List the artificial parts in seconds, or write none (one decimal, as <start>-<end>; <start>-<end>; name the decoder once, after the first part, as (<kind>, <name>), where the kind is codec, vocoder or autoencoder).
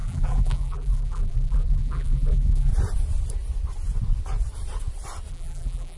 0.0-2.7 (vocoder, BigVGAN v2); 5.3-6.0